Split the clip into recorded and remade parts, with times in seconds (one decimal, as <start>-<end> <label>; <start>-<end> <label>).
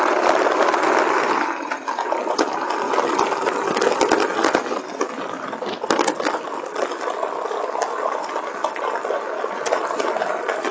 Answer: 0.0-10.7 recorded